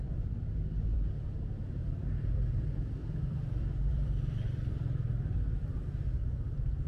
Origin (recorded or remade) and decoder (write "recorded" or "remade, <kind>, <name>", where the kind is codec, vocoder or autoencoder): remade, vocoder, BigVGAN v2